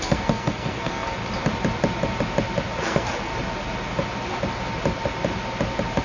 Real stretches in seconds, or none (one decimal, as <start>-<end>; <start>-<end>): 1.2-2.8; 3.3-6.0